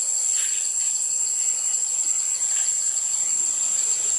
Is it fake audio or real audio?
real